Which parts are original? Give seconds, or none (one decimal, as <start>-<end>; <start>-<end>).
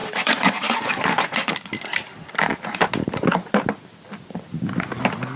1.5-5.4